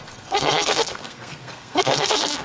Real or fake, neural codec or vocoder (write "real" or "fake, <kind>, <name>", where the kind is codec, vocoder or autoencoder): fake, codec, SNAC